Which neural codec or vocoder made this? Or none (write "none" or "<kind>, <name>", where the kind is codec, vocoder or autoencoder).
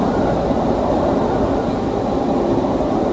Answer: none